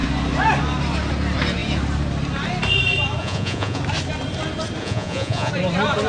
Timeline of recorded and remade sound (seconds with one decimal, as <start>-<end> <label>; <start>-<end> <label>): 0.0-3.2 recorded; 3.2-3.8 remade; 3.8-4.8 recorded; 4.8-5.5 remade; 5.5-6.1 recorded